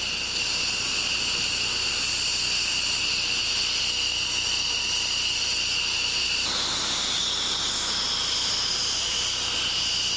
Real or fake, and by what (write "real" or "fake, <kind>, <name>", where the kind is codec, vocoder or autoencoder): real